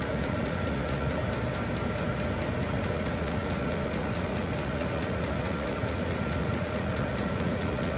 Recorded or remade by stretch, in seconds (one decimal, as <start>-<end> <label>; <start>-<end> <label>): 0.0-1.2 remade; 1.2-2.6 recorded; 2.6-8.0 remade